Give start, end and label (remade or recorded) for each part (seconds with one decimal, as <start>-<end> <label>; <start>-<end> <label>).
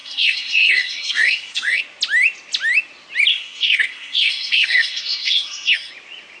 0.0-1.8 remade; 1.8-3.3 recorded; 3.3-5.9 remade; 5.9-6.4 recorded